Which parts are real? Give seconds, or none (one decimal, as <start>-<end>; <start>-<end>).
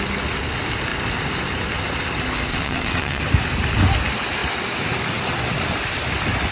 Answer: 0.0-2.5; 3.2-6.5